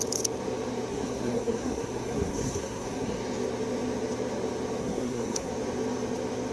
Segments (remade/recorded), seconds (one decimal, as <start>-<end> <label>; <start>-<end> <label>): 0.0-0.9 recorded; 0.9-3.2 remade; 3.2-4.8 recorded; 4.8-5.5 remade; 5.5-6.5 recorded